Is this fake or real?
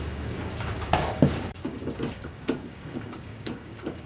fake